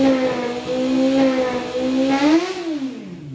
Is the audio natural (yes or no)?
yes